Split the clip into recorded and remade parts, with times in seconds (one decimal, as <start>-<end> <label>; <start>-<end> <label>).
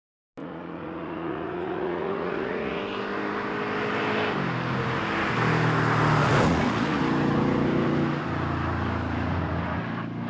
0.0-0.4 recorded; 0.4-2.8 remade; 2.8-6.2 recorded; 6.2-7.0 remade; 7.0-10.3 recorded